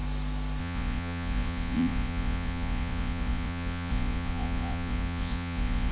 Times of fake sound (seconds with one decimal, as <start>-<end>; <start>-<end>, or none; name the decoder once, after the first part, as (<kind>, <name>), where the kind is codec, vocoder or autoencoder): 0.6-5.9 (vocoder, Vocos)